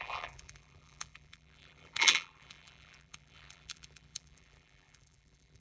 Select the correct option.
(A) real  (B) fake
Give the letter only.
B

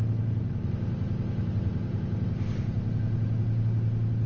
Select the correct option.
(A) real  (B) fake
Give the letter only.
A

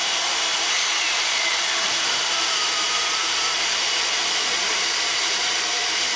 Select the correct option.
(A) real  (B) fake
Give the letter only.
B